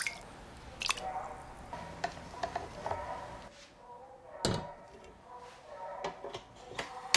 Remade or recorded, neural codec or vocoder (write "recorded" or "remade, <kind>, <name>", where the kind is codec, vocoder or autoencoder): recorded